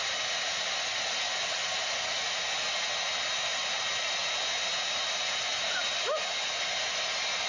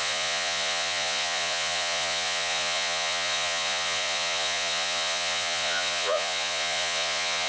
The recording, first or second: first